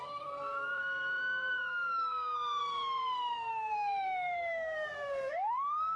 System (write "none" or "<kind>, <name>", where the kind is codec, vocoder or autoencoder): codec, SNAC